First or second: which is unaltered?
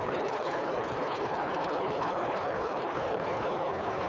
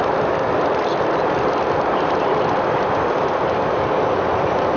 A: second